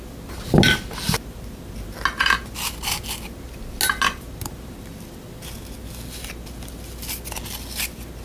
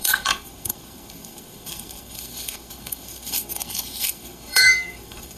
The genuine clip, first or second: first